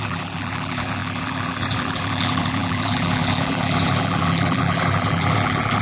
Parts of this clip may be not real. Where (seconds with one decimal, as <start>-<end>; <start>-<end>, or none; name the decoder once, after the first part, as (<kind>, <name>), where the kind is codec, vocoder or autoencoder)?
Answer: 0.0-5.8 (vocoder, BigVGAN v2)